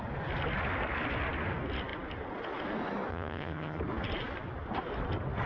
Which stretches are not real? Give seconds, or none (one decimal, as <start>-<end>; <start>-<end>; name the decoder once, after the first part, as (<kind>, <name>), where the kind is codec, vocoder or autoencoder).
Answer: 3.1-3.8 (vocoder, HiFi-GAN)